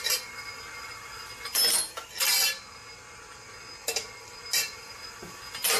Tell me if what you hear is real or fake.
real